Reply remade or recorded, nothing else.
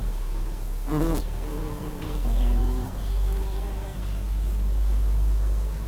remade